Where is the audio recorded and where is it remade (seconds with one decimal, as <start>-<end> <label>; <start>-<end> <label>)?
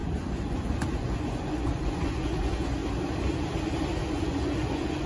0.0-2.8 remade; 2.8-4.0 recorded; 4.0-5.1 remade